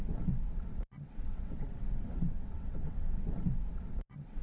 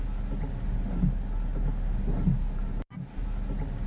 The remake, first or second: first